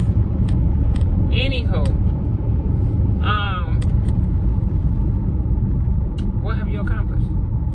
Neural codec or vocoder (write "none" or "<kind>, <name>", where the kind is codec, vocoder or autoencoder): vocoder, Vocos